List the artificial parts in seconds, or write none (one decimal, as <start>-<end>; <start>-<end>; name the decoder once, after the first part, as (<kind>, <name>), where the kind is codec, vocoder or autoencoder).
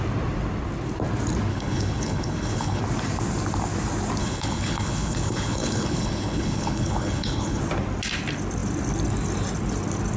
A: 1.5-2.8 (codec, HILCodec); 4.2-7.6